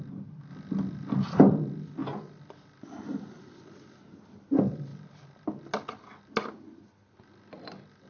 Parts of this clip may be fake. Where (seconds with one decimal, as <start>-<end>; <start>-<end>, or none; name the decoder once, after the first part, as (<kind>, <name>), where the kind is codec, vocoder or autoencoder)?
none